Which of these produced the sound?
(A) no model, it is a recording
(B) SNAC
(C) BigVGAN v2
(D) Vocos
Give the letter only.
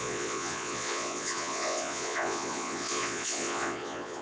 D